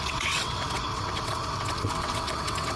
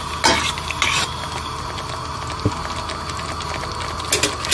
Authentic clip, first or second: second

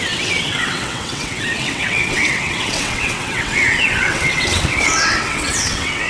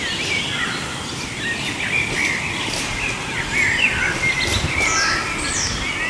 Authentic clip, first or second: second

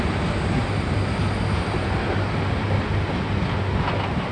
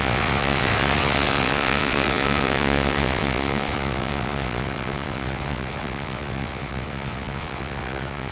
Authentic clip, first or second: first